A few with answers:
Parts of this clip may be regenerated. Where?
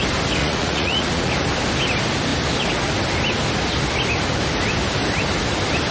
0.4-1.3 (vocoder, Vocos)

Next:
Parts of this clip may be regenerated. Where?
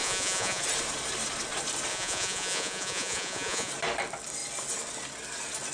0.0-0.6 (vocoder, Vocos); 1.9-3.7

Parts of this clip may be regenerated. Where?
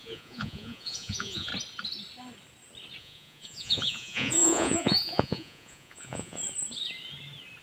0.0-1.5 (vocoder, Vocos); 3.0-6.4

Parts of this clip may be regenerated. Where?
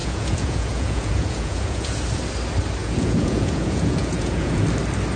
0.0-2.0 (vocoder, Vocos); 2.8-4.6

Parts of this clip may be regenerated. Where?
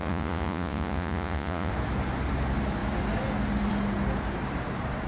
0.0-1.7 (vocoder, Vocos)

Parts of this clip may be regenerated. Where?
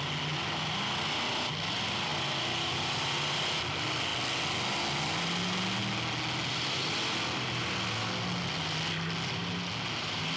none